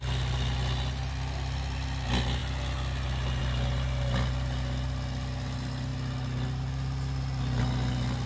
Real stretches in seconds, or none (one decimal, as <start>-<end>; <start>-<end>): 0.0-8.3